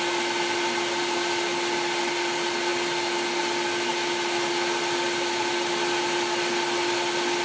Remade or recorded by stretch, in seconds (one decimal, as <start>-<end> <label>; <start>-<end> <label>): 0.0-7.4 recorded